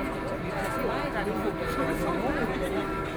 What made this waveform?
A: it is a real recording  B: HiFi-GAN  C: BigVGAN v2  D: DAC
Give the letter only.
A